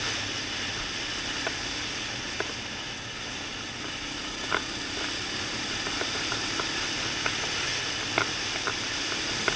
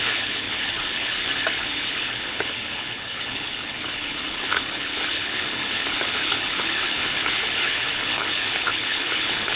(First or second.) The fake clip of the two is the second